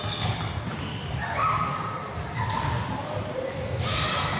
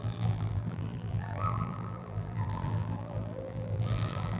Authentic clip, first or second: first